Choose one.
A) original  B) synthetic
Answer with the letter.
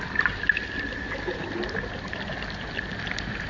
A